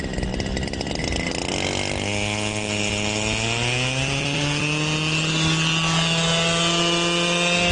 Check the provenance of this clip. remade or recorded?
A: recorded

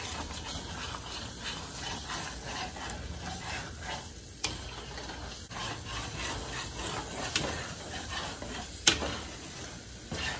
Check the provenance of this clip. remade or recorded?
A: recorded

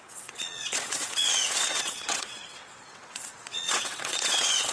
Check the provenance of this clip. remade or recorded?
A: remade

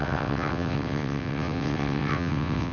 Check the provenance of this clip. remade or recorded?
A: remade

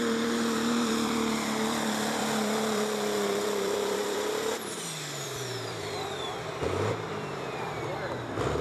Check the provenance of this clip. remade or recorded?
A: remade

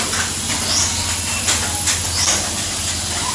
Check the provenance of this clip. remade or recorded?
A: recorded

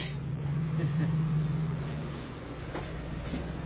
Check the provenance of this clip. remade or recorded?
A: remade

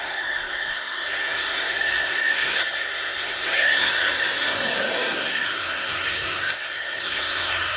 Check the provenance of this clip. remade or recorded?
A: remade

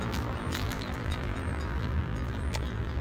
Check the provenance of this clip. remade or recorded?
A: remade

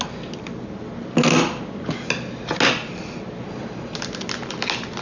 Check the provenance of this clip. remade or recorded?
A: recorded